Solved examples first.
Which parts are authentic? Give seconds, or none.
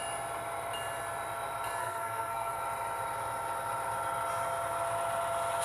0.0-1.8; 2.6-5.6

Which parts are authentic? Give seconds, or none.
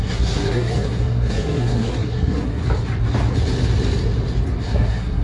2.6-4.6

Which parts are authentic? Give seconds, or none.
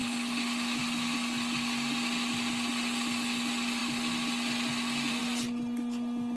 0.0-6.4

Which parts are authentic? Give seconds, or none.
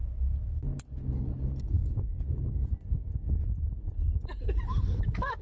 0.0-5.4